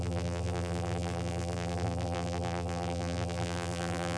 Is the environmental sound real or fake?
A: fake